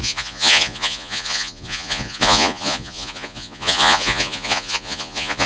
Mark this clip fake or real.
fake